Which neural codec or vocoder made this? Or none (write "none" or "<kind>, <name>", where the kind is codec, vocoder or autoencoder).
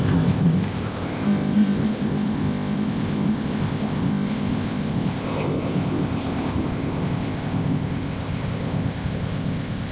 codec, ZipCodec